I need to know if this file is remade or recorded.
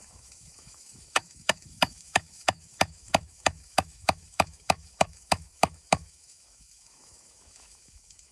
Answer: remade